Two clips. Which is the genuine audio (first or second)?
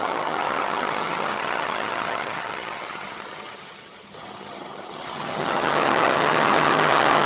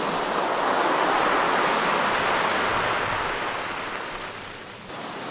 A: second